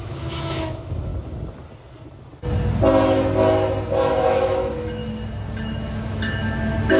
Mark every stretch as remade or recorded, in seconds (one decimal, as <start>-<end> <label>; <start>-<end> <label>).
0.0-1.1 remade; 1.1-4.1 recorded; 4.1-5.0 remade; 5.0-5.6 recorded; 5.6-7.0 remade